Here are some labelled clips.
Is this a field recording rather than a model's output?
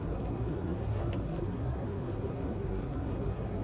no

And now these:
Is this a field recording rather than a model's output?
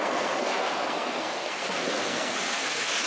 no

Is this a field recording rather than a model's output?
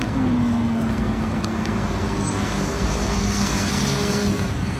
no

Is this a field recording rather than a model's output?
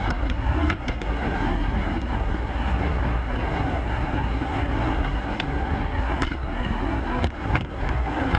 no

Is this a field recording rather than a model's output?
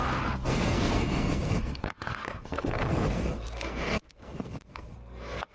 no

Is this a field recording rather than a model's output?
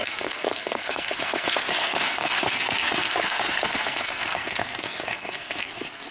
no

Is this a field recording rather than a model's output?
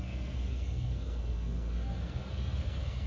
no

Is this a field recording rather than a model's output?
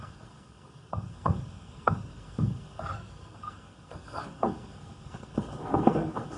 no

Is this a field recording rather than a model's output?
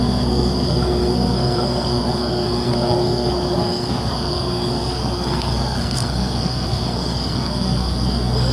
no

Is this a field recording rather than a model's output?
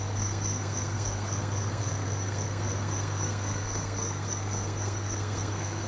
no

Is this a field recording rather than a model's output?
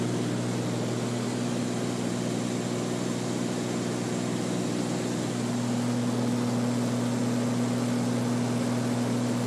yes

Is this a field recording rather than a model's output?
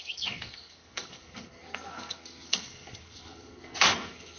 no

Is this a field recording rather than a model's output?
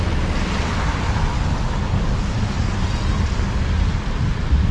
yes